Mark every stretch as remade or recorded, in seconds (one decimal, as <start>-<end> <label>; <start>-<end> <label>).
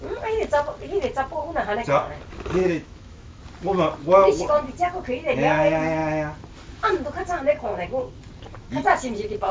0.0-2.6 recorded; 2.6-3.4 remade; 3.4-9.5 recorded